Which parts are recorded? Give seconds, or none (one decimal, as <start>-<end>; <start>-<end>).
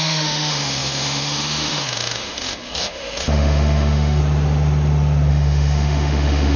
4.2-5.3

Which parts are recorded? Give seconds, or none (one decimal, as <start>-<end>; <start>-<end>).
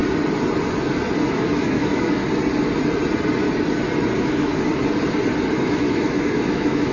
0.0-1.3; 2.2-4.2; 4.7-5.6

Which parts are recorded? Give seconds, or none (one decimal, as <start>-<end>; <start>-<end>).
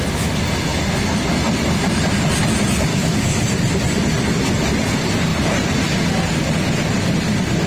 0.0-2.9; 3.4-7.7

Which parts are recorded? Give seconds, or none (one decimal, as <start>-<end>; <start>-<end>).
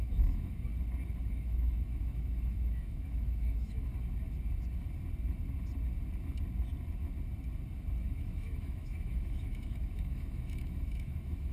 0.7-1.2; 3.9-8.0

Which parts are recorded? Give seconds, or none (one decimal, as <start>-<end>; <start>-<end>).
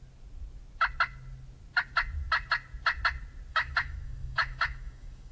0.0-3.5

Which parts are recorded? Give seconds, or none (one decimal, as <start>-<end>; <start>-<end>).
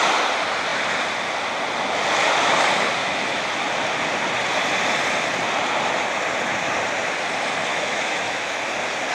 0.0-3.0; 3.5-7.7; 8.6-9.1